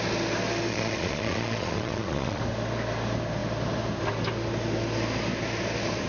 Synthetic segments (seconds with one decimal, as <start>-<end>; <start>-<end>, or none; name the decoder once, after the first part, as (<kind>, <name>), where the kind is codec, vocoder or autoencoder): 0.7-2.4 (vocoder, Vocos)